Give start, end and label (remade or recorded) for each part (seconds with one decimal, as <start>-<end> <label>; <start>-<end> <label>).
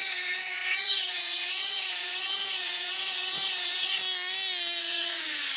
0.0-4.0 remade; 4.0-4.8 recorded; 4.8-5.6 remade